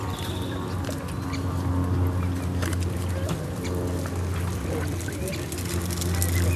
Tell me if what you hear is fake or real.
real